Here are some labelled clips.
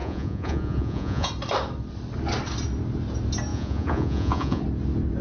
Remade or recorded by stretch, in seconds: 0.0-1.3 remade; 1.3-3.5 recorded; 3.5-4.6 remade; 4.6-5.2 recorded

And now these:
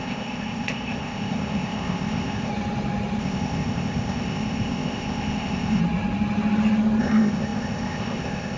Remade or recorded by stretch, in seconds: 0.0-2.5 remade; 2.5-3.2 recorded; 3.2-5.8 remade; 5.8-7.0 recorded; 7.0-8.6 remade

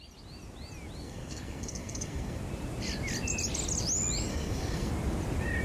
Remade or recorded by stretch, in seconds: 0.0-1.0 recorded; 1.0-2.4 remade; 2.4-4.3 recorded; 4.3-4.9 remade; 4.9-5.6 recorded

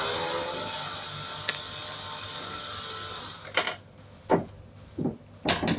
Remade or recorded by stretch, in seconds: 0.0-5.8 recorded

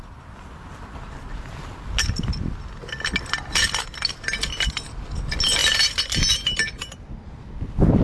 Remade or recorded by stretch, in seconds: 0.0-8.0 recorded